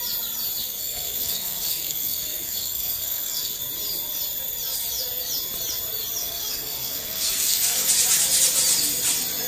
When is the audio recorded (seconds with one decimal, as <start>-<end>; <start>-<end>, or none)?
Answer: 0.0-0.6; 3.6-6.2; 7.9-9.5

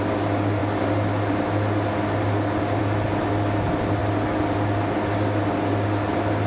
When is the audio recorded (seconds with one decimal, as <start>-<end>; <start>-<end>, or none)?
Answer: 0.0-6.5

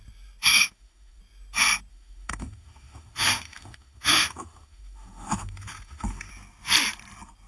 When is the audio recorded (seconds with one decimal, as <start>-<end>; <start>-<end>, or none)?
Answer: 0.0-0.5; 1.2-1.9; 6.3-7.5

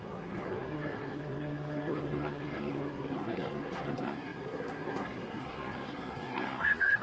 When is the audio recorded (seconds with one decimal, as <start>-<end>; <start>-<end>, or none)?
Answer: none

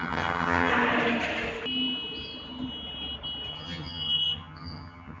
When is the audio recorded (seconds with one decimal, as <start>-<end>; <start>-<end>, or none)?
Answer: 0.7-3.5